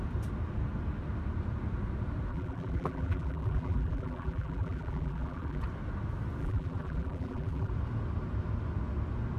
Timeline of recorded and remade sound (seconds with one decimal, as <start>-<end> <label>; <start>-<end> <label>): 0.0-2.3 recorded; 2.3-5.6 remade; 5.6-6.4 recorded; 6.4-7.7 remade; 7.7-9.4 recorded